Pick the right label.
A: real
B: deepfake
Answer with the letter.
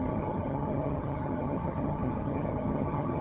B